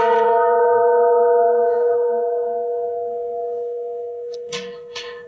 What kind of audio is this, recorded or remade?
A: remade